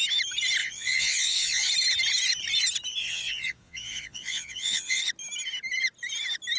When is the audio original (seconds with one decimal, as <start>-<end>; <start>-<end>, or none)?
0.0-0.6; 1.7-3.0; 5.0-6.6